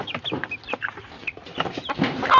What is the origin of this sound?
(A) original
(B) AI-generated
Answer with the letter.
A